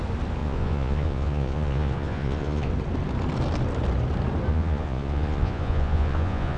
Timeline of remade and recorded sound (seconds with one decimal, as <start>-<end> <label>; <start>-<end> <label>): 0.0-0.4 recorded; 0.4-2.7 remade; 2.7-4.5 recorded; 4.5-6.6 remade